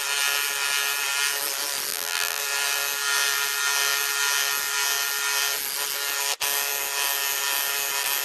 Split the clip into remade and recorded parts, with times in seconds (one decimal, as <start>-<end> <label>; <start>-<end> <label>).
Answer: 0.0-1.9 recorded; 1.9-2.4 remade; 2.4-8.2 recorded

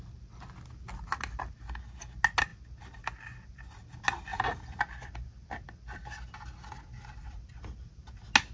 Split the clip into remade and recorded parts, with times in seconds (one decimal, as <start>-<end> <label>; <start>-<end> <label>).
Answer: 0.0-8.5 recorded

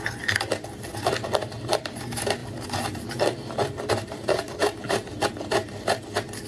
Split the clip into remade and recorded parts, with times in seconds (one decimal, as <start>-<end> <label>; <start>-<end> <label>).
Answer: 0.0-5.1 remade; 5.1-6.5 recorded

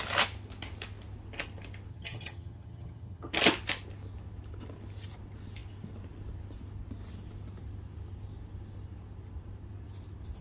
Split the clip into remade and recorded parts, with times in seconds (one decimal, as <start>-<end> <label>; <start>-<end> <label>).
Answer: 0.0-1.9 recorded; 1.9-3.3 remade; 3.3-10.4 recorded

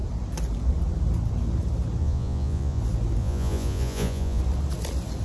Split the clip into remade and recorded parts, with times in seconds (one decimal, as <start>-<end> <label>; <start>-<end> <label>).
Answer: 0.0-2.0 recorded; 2.0-2.8 remade; 2.8-3.2 recorded; 3.2-4.4 remade; 4.4-5.2 recorded

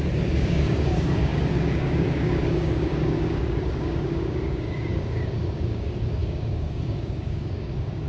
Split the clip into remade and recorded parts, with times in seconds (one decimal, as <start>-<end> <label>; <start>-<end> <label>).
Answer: 0.0-8.1 remade

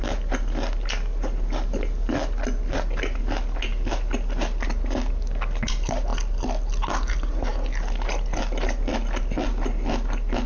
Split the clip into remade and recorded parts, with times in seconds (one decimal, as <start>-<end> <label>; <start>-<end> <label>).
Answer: 0.0-10.5 recorded